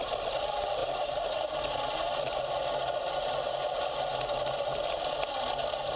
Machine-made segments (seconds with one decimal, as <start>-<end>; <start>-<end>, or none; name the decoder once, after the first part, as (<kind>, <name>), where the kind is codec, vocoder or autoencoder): 0.8-1.6 (vocoder, BigVGAN v2)